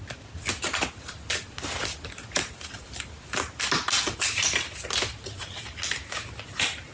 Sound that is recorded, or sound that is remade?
recorded